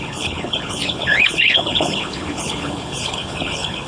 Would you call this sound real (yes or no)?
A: no